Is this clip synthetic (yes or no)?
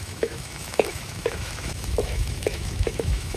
yes